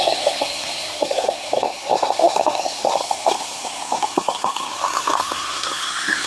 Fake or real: fake